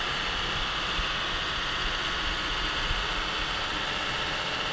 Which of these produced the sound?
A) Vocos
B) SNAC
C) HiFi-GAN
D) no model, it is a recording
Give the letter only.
D